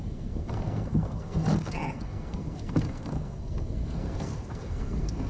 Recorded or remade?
remade